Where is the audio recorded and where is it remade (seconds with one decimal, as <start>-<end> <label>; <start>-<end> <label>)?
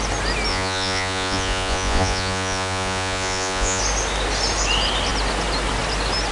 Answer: 0.0-0.5 recorded; 0.5-3.8 remade; 3.8-6.3 recorded